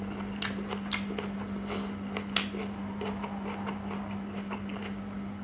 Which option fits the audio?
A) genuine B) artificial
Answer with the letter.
A